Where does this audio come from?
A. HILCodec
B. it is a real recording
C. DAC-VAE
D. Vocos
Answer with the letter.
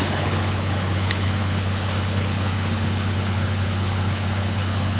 A